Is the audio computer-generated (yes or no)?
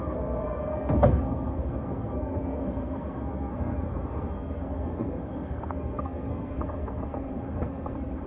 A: yes